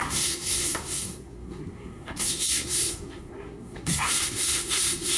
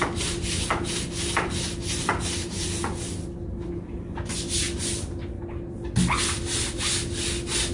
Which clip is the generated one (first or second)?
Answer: first